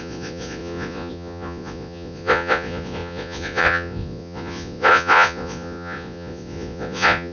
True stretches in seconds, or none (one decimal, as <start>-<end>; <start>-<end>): none

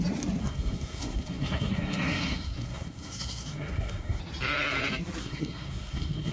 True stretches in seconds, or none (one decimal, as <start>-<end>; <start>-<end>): 0.0-0.4; 4.2-5.2

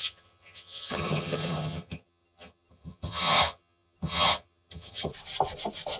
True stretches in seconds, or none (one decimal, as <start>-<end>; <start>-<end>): 5.1-6.0

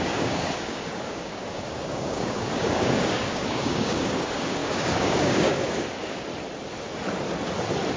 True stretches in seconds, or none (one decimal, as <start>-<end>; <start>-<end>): 6.3-8.0

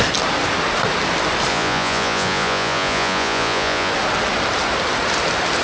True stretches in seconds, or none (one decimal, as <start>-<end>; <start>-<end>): 0.0-1.5; 3.9-5.6